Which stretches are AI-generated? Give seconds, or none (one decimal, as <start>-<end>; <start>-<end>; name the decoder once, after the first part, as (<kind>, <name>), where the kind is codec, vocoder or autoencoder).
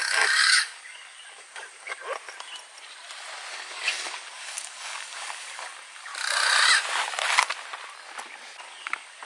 0.0-2.0 (codec, DAC); 3.5-6.1; 8.6-9.3